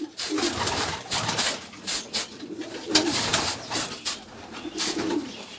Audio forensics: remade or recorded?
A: remade